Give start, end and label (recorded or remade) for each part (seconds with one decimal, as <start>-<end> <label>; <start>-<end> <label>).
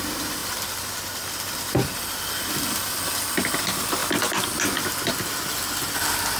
0.0-6.4 recorded